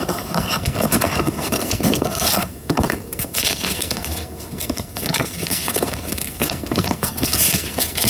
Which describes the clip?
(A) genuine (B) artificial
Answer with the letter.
B